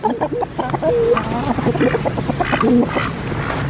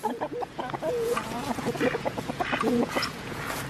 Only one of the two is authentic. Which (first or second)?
first